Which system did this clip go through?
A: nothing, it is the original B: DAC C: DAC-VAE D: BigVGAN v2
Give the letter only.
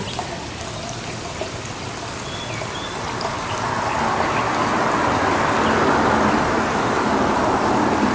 A